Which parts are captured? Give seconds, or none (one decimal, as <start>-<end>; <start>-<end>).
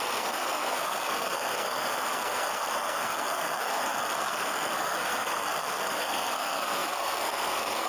none